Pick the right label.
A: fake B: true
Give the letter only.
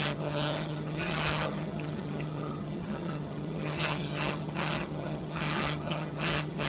A